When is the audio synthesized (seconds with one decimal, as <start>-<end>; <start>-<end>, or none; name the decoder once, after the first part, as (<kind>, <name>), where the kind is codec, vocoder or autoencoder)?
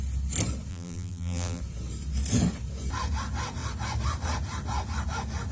0.7-1.6 (vocoder, BigVGAN v2)